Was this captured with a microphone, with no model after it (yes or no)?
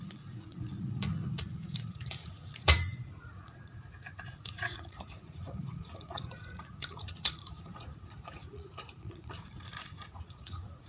no